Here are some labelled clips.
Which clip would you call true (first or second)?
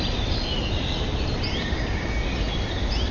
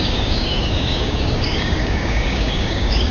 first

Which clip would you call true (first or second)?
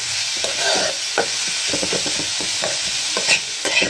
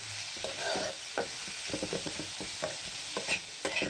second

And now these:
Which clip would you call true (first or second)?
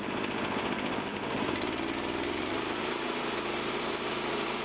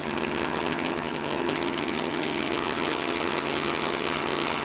first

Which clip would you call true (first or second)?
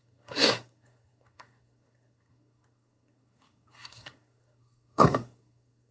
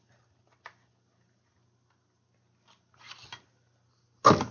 second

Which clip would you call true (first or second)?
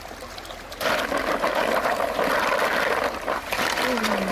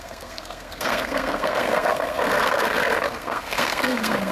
first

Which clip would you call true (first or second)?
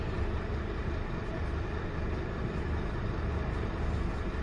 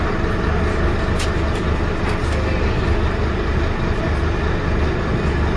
second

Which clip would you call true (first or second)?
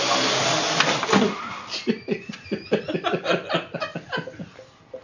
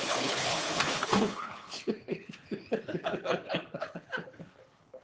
first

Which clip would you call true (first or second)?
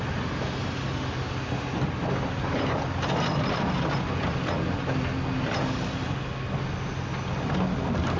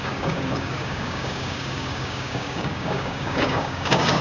first